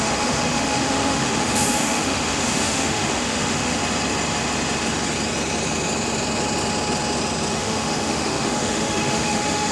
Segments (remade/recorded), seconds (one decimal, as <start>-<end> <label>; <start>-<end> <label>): 0.0-3.8 remade; 3.8-7.5 recorded; 7.5-9.7 remade

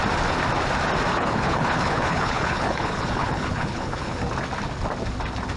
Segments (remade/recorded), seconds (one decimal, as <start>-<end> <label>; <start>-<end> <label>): 0.0-1.1 recorded; 1.1-4.2 remade; 4.2-5.6 recorded